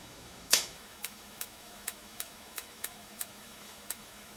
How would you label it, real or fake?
fake